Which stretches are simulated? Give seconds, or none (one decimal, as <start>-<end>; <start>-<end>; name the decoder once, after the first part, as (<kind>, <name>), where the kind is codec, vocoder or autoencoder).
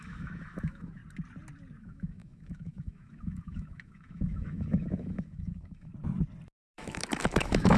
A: 0.0-1.0 (autoencoder, DAC-VAE); 1.8-5.9; 6.6-7.8